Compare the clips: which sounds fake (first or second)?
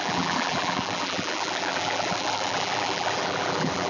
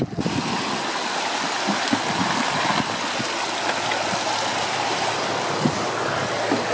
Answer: first